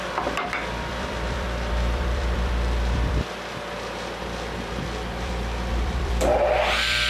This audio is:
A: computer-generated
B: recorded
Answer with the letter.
A